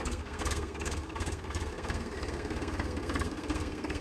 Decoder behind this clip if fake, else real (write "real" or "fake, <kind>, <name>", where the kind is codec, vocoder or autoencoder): fake, codec, SNAC